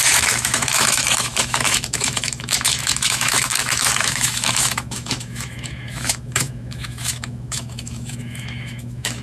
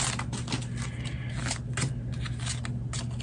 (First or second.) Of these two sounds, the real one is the second